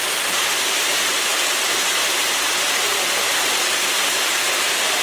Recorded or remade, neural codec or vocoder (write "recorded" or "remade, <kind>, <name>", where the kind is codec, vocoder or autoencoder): remade, vocoder, BigVGAN v2